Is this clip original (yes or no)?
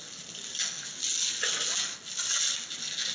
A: yes